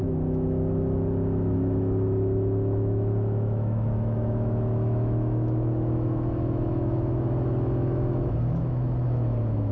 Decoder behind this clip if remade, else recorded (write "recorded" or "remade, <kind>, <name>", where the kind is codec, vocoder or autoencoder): remade, autoencoder, DAC-VAE